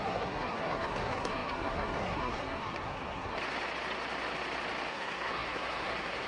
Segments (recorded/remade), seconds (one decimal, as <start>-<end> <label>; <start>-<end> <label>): 0.0-3.4 remade; 3.4-4.9 recorded; 4.9-6.3 remade